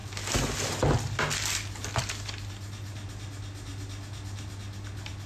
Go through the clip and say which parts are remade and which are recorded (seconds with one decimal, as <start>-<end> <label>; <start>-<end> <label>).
0.0-5.3 recorded